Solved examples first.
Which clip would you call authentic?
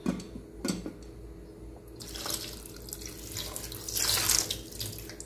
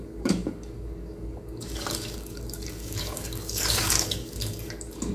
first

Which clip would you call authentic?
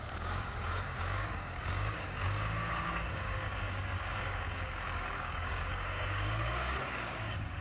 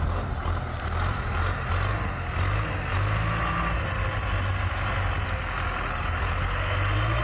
second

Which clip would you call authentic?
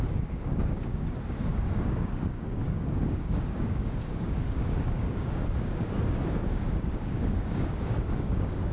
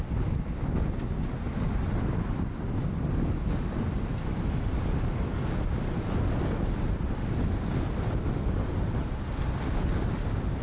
second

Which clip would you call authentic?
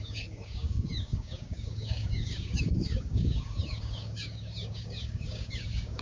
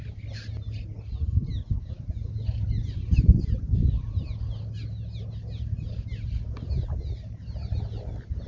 second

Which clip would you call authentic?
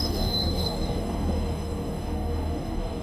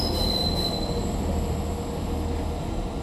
second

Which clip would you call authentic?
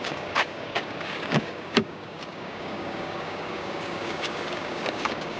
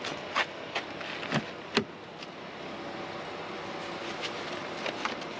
second